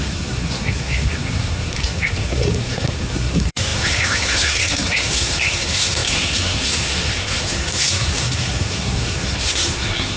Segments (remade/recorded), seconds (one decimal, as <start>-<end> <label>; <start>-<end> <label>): 0.0-10.2 remade